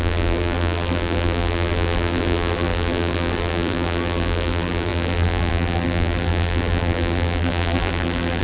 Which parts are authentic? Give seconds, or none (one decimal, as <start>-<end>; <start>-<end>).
none